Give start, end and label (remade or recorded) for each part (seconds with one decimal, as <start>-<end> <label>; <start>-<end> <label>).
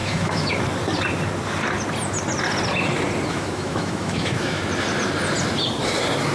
0.0-0.5 remade; 0.5-3.3 recorded; 3.3-4.6 remade; 4.6-6.3 recorded